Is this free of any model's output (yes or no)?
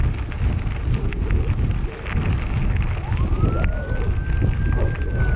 yes